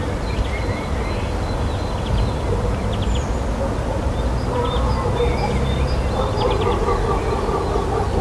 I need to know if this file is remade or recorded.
recorded